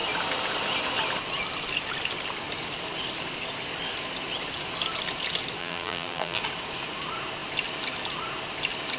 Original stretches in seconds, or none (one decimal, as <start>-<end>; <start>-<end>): 0.0-5.6; 6.4-9.0